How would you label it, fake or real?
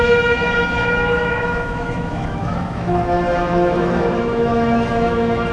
fake